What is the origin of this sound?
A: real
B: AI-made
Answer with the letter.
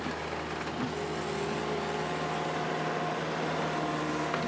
A